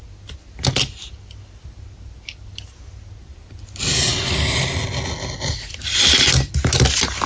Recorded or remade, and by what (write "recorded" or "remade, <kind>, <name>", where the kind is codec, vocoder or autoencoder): recorded